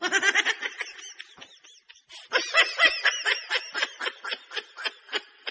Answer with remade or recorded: recorded